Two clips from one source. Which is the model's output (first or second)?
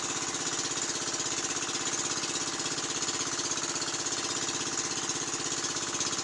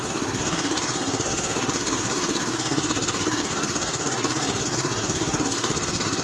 second